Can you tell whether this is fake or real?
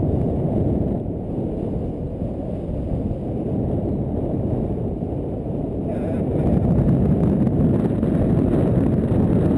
real